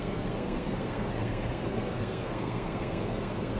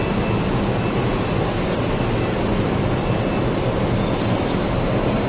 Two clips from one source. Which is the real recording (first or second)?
second